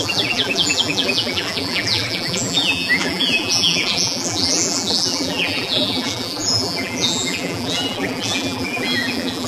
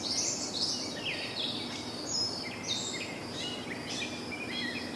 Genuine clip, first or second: second